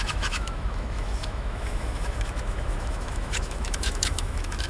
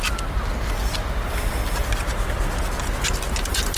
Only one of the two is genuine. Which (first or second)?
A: second